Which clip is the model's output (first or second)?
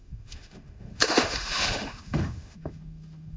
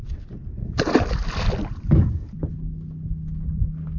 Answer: first